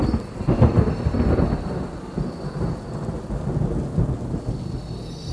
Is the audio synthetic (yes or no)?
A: no